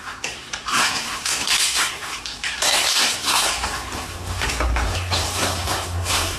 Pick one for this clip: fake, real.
fake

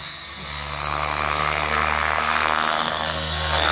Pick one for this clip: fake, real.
fake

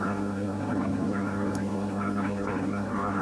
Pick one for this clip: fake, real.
fake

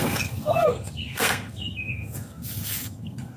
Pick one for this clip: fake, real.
fake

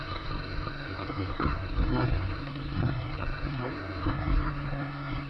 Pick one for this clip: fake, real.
fake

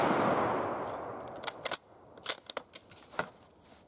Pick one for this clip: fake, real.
real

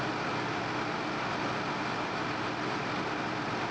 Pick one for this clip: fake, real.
real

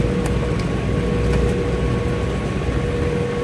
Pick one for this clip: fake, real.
real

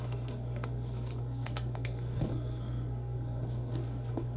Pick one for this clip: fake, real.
fake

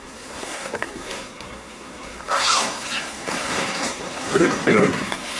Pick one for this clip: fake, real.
fake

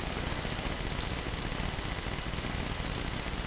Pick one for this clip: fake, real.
real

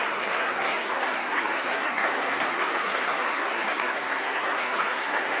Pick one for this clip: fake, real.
fake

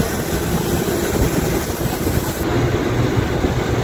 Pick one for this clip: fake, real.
real